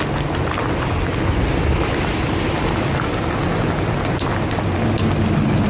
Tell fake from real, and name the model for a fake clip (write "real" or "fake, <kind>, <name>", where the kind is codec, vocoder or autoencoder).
real